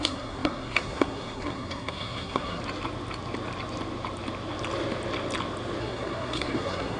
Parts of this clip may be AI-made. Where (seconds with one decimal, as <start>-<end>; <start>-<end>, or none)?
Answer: 0.0-2.6; 5.8-7.0